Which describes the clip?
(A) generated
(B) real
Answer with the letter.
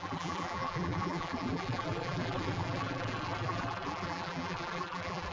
A